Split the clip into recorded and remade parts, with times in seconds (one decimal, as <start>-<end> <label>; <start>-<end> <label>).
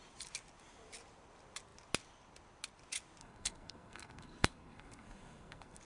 0.0-3.2 recorded; 3.2-5.8 remade